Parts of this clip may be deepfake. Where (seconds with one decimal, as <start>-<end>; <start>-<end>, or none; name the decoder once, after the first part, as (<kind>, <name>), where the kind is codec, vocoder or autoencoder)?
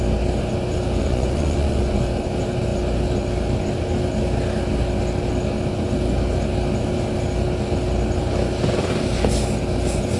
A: 1.0-2.0 (vocoder, Vocos)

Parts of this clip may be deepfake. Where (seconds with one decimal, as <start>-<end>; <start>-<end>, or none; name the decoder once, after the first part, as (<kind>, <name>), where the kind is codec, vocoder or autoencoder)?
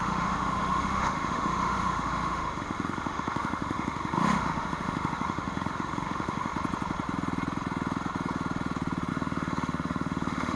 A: 0.0-6.5 (autoencoder, DAC-VAE); 9.1-10.6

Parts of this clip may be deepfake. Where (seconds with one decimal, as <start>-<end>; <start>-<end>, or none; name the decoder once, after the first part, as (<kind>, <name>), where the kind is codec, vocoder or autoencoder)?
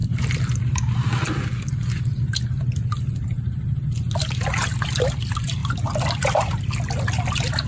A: none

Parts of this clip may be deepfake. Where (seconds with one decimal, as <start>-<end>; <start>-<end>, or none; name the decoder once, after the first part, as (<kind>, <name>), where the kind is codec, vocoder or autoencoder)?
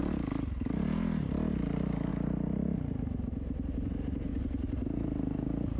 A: none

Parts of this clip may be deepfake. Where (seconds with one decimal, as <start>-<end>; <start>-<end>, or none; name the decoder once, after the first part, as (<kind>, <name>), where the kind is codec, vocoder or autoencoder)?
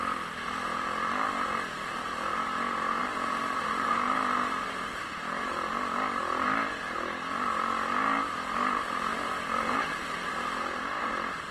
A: 3.0-5.5 (vocoder, BigVGAN v2); 9.1-11.1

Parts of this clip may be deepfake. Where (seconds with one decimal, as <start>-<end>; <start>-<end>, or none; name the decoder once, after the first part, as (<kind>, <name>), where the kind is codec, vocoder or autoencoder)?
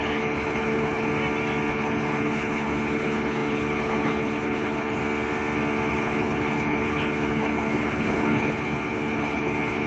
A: 0.0-1.1 (codec, HILCodec); 1.7-5.0; 5.9-9.9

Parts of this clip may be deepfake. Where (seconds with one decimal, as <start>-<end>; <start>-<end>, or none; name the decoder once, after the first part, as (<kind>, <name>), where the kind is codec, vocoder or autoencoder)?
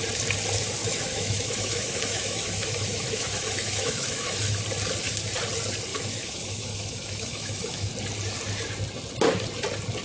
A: 0.8-4.6 (autoencoder, DAC-VAE); 5.9-7.9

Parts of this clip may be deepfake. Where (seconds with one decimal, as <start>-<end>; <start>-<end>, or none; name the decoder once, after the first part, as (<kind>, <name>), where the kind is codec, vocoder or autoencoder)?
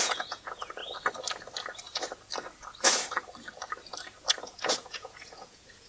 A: 0.0-0.8 (vocoder, Vocos); 4.3-5.9